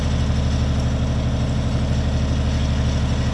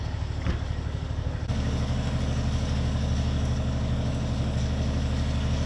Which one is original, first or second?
first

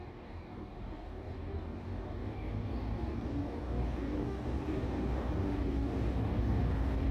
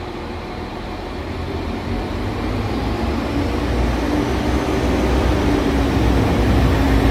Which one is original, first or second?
second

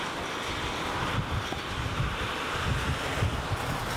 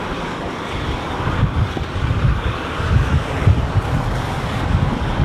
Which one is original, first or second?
first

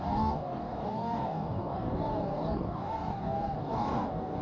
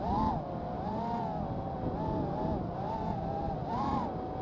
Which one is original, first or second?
second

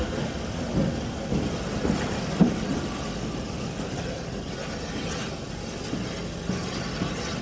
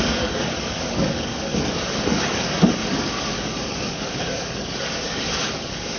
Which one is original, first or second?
first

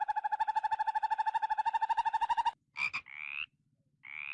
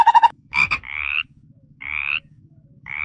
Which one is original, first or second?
first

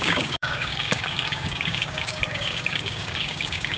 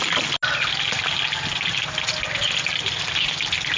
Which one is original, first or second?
second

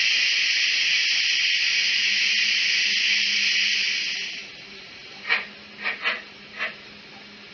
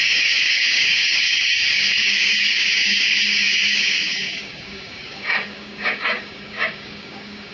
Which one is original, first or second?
first